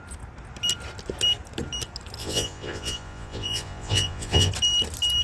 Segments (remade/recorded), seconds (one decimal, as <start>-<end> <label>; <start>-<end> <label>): 0.0-2.2 recorded; 2.2-4.5 remade; 4.5-5.2 recorded